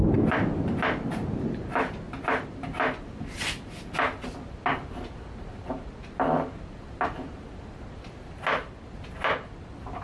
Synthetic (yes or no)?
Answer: no